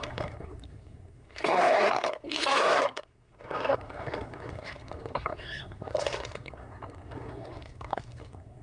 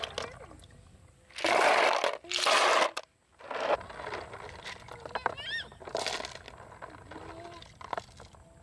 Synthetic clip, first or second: first